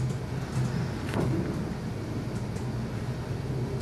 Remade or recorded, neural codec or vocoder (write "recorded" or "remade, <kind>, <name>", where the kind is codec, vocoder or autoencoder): recorded